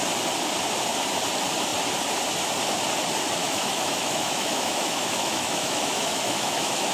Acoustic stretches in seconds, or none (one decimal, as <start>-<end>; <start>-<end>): 0.0-3.4